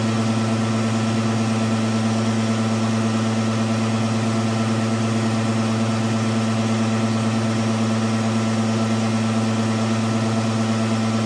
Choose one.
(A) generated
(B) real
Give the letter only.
B